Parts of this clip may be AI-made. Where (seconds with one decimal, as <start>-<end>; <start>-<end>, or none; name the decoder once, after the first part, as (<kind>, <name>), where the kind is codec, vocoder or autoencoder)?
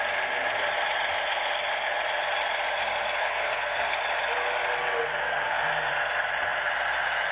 3.2-4.0 (codec, SNAC); 5.2-5.9